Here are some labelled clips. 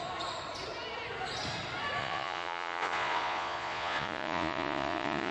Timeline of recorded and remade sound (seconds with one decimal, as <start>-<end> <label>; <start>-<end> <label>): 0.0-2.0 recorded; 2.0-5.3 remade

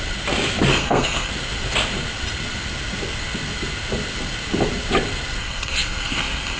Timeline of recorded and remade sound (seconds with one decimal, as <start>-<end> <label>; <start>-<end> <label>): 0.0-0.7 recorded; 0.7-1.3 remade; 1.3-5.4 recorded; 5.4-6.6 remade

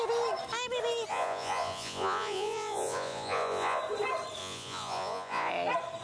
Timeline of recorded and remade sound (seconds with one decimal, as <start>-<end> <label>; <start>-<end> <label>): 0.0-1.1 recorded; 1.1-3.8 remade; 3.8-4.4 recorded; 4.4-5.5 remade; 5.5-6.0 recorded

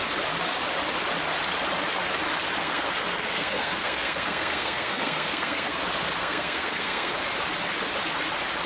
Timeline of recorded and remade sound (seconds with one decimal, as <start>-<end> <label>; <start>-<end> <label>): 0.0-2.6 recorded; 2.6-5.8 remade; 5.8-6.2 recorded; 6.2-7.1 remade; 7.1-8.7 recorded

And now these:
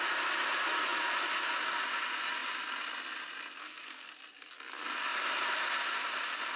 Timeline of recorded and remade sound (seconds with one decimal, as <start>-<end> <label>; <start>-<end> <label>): 0.0-3.6 recorded; 3.6-4.1 remade; 4.1-6.6 recorded